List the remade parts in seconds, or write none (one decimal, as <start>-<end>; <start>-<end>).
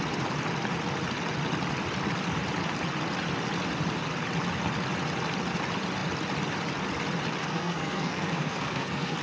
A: 7.4-9.2